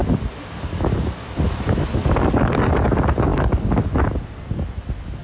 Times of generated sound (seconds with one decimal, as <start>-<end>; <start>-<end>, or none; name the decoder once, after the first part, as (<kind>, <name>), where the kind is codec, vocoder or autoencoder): 2.0-2.7 (codec, DAC); 3.3-3.8